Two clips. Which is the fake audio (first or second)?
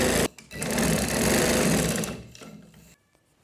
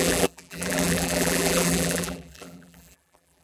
second